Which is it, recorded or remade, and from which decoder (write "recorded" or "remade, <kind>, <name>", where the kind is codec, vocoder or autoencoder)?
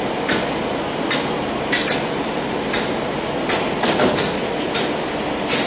recorded